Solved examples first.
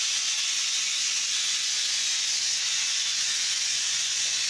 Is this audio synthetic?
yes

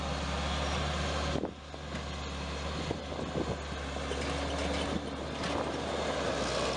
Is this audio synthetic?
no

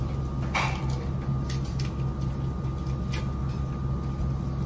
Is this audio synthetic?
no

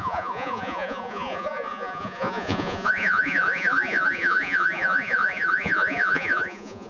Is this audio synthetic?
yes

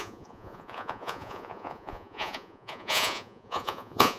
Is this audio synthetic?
yes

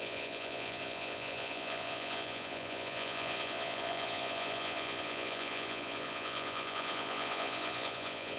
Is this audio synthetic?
yes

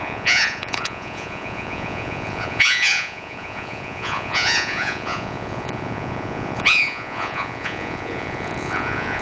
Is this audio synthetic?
yes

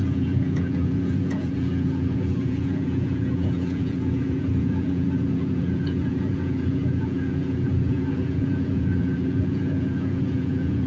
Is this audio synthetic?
yes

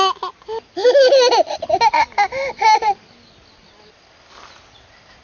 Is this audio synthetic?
no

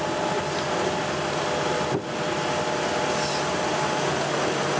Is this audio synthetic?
no